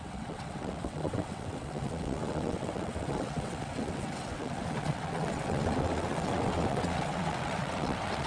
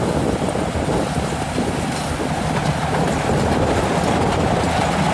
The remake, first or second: first